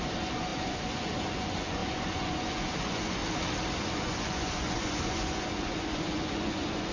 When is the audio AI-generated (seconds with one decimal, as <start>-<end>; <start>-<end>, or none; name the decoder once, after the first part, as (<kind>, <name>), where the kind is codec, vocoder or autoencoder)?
0.0-3.2 (vocoder, Vocos); 3.8-6.9